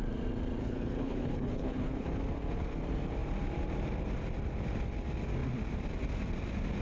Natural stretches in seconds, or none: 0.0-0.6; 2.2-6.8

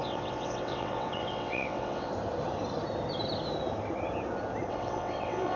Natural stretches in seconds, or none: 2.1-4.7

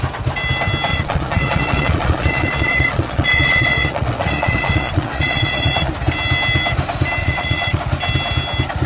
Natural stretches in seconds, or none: 0.0-0.9; 5.9-7.2; 7.8-8.9

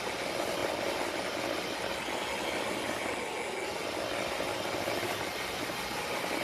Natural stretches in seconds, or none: 0.0-6.4

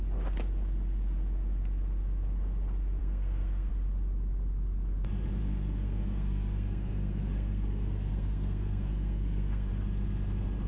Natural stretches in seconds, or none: 0.0-3.0; 3.7-5.4; 9.7-10.7

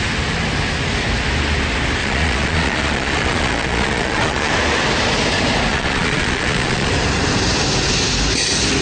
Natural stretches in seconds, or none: 0.0-2.0; 4.5-5.7; 6.9-8.8

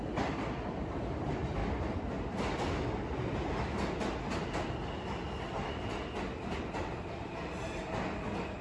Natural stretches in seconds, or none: 0.0-8.6